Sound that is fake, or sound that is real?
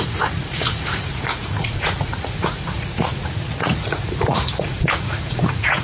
fake